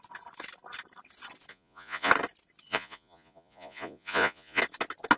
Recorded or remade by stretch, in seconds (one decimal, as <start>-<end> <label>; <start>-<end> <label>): 0.0-1.5 recorded; 1.5-2.1 remade; 2.1-2.7 recorded; 2.7-4.6 remade; 4.6-5.2 recorded